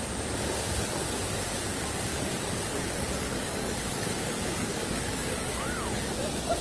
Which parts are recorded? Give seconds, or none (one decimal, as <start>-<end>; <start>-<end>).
0.0-2.1; 6.1-6.6